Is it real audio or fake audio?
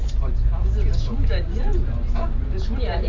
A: real